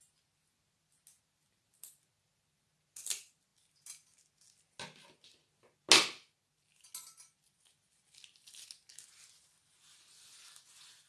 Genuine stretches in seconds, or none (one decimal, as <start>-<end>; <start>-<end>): 0.0-11.1